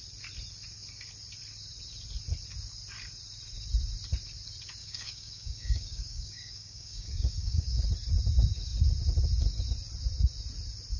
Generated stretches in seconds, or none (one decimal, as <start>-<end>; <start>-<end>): 4.8-7.8